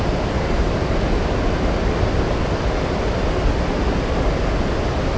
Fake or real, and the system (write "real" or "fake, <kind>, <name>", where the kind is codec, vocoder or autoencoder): real